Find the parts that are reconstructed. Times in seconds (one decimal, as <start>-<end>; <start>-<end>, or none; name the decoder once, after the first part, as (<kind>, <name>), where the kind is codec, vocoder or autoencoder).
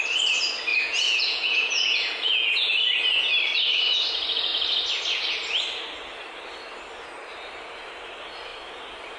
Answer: 0.7-3.0 (vocoder, Vocos)